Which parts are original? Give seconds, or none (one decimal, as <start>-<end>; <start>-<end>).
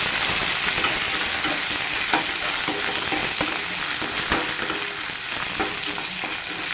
0.0-6.7